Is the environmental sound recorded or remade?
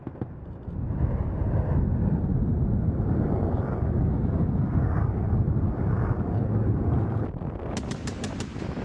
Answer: recorded